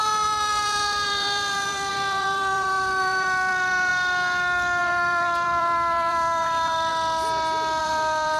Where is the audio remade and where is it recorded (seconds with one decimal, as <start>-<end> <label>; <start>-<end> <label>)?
0.0-3.9 remade; 3.9-4.8 recorded; 4.8-6.9 remade; 6.9-7.8 recorded; 7.8-8.4 remade